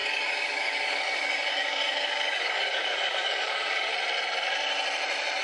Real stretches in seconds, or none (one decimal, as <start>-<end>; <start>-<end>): 3.9-5.4